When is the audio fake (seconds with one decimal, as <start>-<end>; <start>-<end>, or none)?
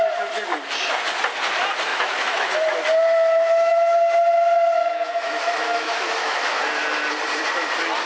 1.9-2.5; 4.8-6.6